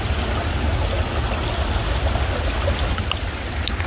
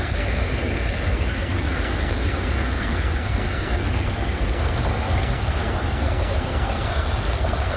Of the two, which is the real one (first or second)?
first